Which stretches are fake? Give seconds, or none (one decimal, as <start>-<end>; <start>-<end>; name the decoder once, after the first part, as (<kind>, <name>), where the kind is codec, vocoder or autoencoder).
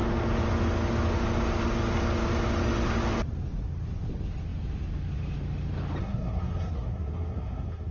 6.0-7.9 (codec, SNAC)